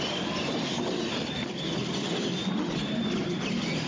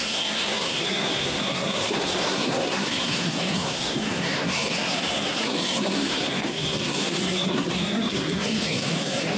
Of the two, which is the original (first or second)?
first